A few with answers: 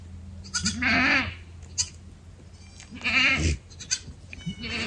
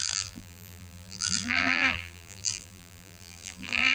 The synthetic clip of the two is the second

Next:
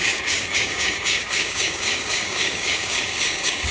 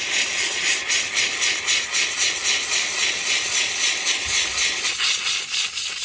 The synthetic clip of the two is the first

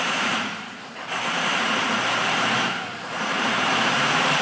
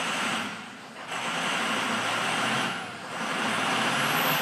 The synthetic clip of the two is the first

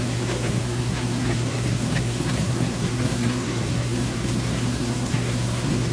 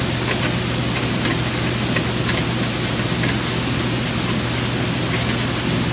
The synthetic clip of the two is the first